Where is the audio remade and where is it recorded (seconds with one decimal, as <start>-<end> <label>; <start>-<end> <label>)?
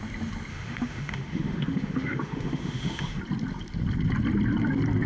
0.0-0.5 recorded; 0.5-3.2 remade; 3.2-5.1 recorded